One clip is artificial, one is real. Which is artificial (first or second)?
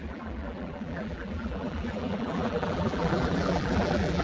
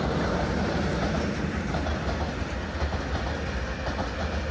first